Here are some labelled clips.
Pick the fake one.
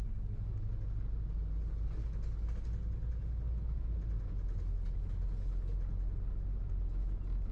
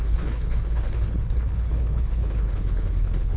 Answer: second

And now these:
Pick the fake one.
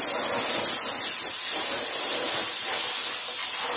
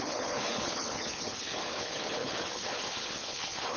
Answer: second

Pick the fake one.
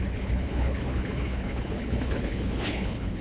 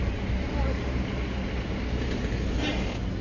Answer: first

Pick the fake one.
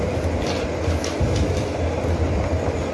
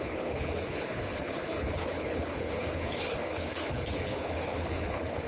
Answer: second